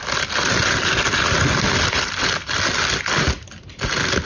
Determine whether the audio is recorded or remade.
recorded